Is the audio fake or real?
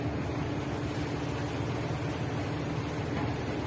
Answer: real